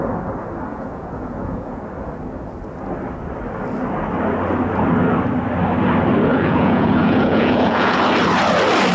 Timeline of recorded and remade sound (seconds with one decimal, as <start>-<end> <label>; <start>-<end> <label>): 0.0-0.7 recorded; 0.7-1.8 remade; 1.8-6.3 recorded; 6.3-8.0 remade; 8.0-8.9 recorded